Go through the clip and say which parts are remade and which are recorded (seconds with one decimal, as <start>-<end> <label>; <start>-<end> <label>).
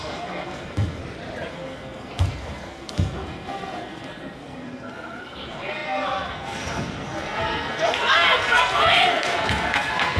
0.0-1.0 remade; 1.0-1.5 recorded; 1.5-10.2 remade